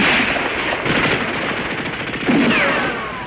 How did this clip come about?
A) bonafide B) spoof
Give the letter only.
A